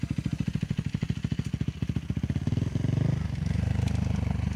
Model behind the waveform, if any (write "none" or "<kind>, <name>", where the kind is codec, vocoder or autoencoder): none